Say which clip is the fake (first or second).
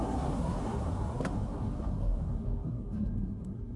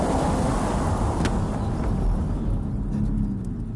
first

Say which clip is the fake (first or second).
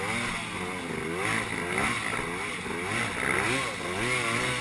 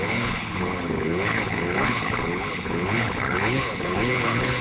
second